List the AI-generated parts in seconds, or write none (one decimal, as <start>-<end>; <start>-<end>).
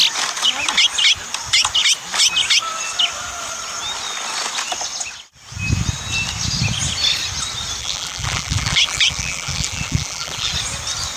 7.8-10.5